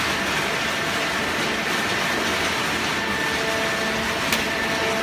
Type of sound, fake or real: real